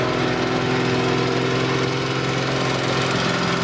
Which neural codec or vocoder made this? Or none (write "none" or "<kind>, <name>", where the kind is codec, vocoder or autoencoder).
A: none